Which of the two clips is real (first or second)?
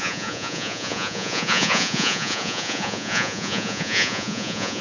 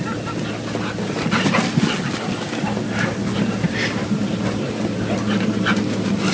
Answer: second